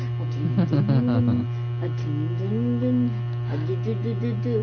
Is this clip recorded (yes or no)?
yes